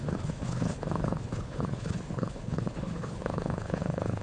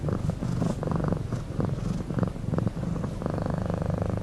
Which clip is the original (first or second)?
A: second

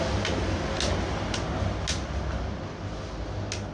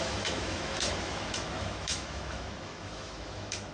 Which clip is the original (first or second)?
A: first